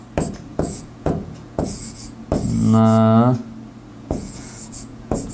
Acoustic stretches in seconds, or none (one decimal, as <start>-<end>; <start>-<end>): 0.0-0.5; 2.3-3.9